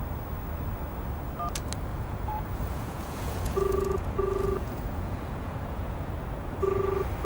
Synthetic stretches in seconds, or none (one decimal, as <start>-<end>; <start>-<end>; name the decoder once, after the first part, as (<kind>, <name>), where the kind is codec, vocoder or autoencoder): 1.9-6.1 (vocoder, Vocos)